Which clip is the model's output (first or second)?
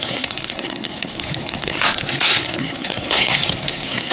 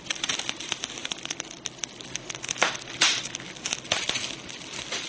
first